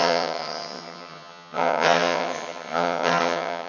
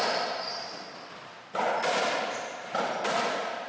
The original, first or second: second